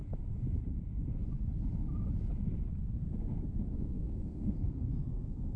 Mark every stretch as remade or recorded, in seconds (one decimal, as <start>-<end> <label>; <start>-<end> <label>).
0.0-3.7 recorded; 3.7-5.6 remade

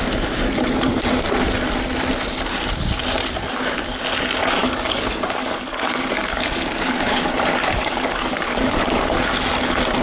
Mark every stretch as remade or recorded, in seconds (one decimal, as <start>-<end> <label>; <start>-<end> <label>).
0.0-4.6 recorded; 4.6-9.0 remade; 9.0-10.0 recorded